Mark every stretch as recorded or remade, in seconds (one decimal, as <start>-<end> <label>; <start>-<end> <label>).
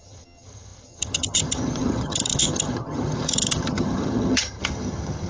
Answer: 0.0-5.3 remade